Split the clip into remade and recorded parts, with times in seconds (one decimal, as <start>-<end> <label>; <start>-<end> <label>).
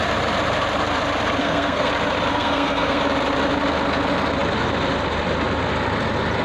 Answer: 0.0-1.4 recorded; 1.4-1.9 remade; 1.9-2.3 recorded; 2.3-3.0 remade; 3.0-6.4 recorded